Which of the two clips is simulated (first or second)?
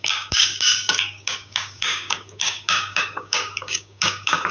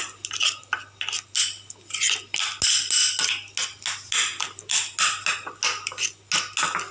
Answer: first